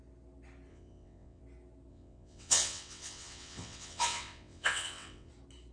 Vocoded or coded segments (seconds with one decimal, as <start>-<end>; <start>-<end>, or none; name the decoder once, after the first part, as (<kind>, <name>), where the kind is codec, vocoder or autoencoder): 0.7-1.4 (vocoder, WaveNeXt); 1.9-5.3